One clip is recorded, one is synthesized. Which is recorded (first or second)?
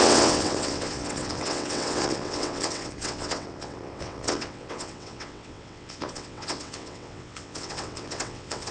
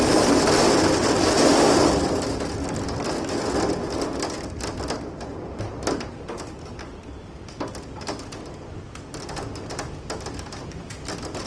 second